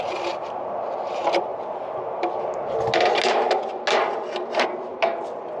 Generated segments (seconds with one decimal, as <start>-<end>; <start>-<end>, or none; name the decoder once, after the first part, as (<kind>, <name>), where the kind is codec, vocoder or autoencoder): none